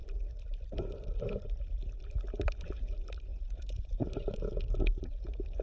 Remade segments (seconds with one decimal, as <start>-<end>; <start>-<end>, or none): 3.3-3.9